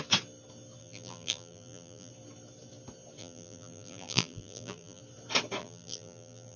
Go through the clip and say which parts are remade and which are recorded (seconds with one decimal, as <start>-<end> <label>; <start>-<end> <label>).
0.0-0.8 recorded; 0.8-2.1 remade; 2.1-3.2 recorded; 3.2-5.0 remade; 5.0-5.6 recorded; 5.6-6.6 remade